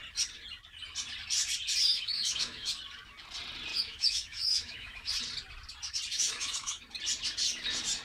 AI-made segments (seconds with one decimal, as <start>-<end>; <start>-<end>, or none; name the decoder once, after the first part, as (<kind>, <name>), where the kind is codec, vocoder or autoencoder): 1.9-2.7 (autoencoder, DAC-VAE); 3.7-5.1; 6.1-6.8